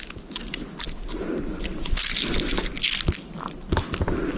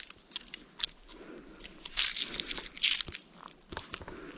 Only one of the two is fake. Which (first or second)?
first